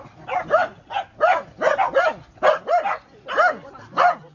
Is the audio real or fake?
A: real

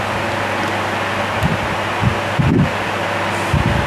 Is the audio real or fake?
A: real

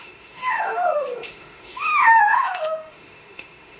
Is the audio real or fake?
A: fake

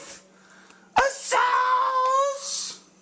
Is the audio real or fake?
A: real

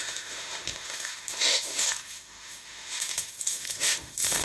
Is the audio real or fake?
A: fake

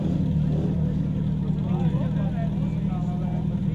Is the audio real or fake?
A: real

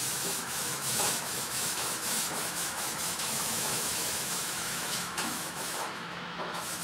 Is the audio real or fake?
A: fake